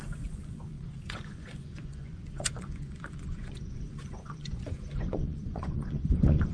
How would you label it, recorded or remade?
remade